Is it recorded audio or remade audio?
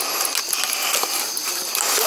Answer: recorded